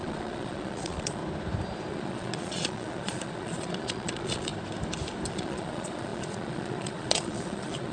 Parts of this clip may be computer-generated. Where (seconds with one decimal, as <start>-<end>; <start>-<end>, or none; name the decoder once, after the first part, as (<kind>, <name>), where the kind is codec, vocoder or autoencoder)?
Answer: 0.0-1.2 (vocoder, Vocos); 1.9-4.5; 5.3-7.9